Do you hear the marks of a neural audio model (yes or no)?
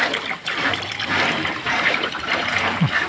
yes